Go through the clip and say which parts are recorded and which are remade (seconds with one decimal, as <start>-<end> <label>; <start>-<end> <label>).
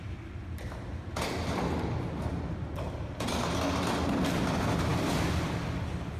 0.0-6.2 recorded